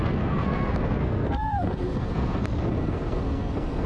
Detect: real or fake fake